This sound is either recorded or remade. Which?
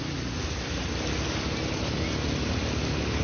recorded